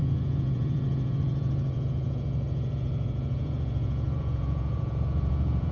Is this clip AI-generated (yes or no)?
yes